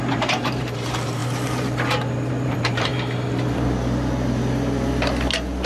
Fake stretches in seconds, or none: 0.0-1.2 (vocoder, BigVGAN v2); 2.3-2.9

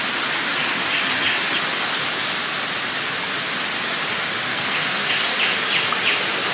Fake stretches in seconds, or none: 4.5-5.1 (codec, SNAC)

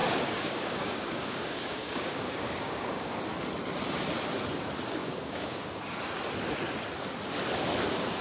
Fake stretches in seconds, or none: 0.0-3.2 (codec, DAC); 5.0-5.8

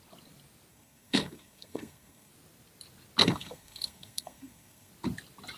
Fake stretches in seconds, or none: 0.7-2.3 (codec, SNAC); 3.2-4.9

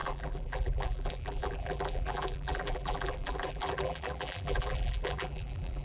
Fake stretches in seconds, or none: 0.0-5.8 (vocoder, BigVGAN v2)

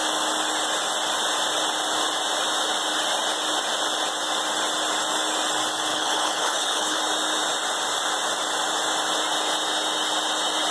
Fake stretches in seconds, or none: 5.9-7.0 (codec, HILCodec)

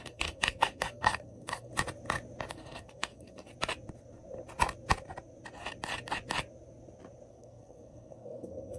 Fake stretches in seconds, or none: 0.0-1.7 (codec, SNAC); 2.5-3.5; 7.3-8.8

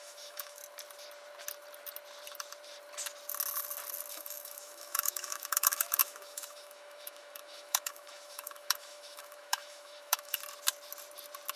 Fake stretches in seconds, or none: 0.0-0.6 (autoencoder, DAC-VAE); 4.1-10.4